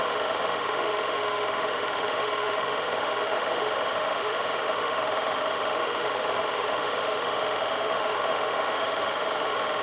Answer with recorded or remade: remade